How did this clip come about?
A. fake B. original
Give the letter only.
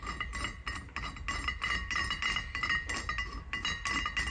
B